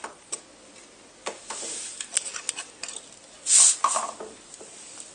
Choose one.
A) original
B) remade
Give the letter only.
A